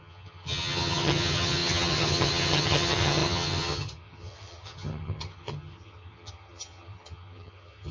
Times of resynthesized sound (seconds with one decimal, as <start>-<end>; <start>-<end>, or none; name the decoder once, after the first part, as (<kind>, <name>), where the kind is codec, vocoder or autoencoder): 0.0-7.9 (vocoder, HiFi-GAN)